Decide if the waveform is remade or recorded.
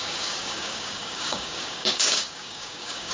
remade